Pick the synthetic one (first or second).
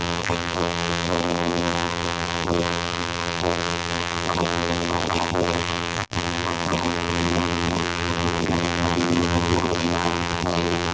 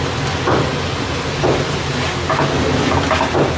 first